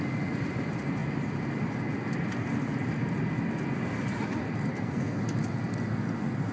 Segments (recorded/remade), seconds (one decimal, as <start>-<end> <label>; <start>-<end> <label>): 0.0-4.7 recorded; 4.7-5.2 remade; 5.2-6.5 recorded